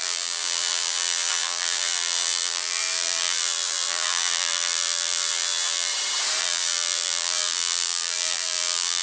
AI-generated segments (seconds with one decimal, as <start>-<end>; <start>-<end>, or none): 0.0-5.9; 6.4-9.0